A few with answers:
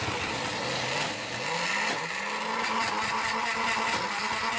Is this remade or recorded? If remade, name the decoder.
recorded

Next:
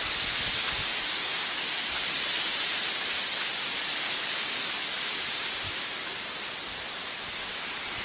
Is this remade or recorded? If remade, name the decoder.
recorded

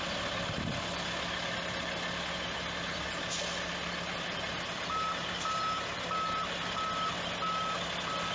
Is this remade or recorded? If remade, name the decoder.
recorded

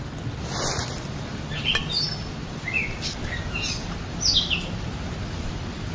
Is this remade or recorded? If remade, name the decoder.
recorded